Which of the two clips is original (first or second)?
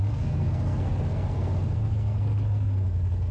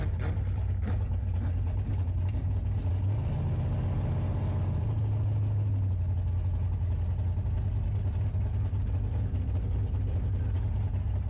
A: second